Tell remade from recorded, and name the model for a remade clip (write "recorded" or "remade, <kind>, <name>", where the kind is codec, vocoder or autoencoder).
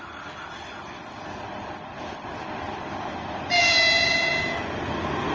recorded